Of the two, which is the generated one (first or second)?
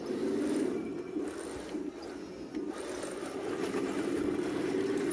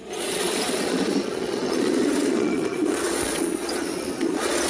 second